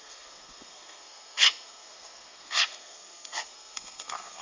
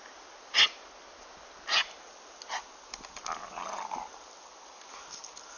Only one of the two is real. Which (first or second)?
second